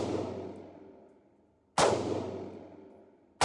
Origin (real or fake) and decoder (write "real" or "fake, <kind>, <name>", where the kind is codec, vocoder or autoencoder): real